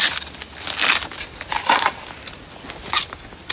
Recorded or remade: recorded